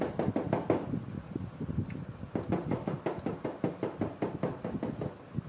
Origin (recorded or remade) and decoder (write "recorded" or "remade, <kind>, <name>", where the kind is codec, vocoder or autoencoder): recorded